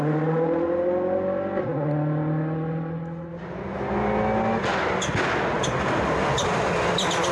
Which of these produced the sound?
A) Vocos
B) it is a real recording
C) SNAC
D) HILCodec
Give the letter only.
B